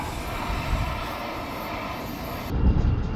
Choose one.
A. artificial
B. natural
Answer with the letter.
B